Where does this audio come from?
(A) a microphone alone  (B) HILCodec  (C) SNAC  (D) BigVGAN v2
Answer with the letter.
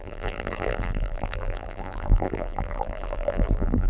D